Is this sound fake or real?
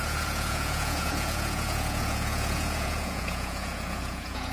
fake